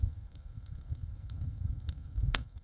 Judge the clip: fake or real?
fake